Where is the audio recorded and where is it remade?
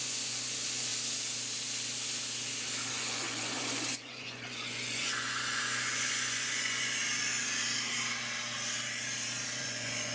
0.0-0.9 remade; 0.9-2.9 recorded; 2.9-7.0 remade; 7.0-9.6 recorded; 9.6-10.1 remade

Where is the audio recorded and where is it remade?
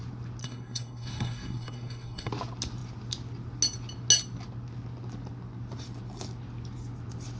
0.0-0.4 recorded; 0.4-2.3 remade; 2.3-7.4 recorded